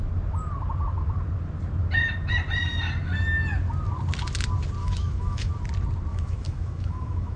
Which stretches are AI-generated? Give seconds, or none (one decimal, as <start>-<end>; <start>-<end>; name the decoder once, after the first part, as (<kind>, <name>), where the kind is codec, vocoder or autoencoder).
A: 4.8-5.5 (autoencoder, DAC-VAE); 6.1-7.4